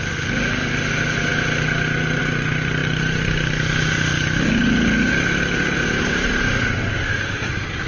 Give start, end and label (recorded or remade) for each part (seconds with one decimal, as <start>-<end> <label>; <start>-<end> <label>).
0.0-6.9 recorded; 6.9-7.5 remade; 7.5-7.9 recorded